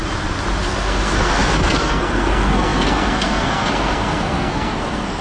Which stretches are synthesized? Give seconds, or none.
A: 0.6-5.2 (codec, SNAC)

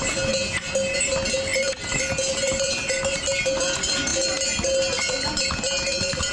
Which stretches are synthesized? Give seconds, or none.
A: none

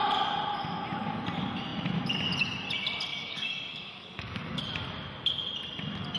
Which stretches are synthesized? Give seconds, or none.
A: 3.1-4.6 (codec, DAC)

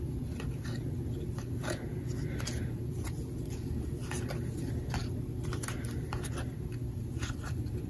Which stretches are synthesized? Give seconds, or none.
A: none

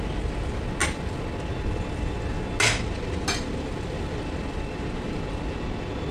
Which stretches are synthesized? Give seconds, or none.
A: none

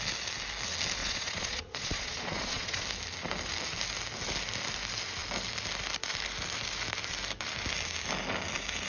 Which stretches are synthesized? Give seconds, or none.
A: 1.0-2.8 (vocoder, Vocos)

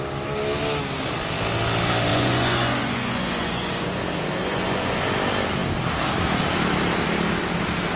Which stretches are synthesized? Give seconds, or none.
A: 2.1-4.0 (vocoder, Vocos); 4.4-5.0

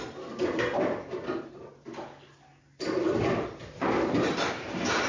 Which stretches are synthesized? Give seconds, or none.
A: none